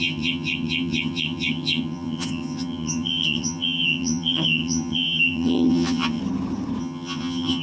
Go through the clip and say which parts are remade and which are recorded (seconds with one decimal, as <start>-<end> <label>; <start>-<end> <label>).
0.0-6.2 remade; 6.2-6.8 recorded; 6.8-7.6 remade